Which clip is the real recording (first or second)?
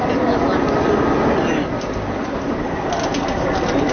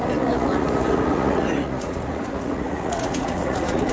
first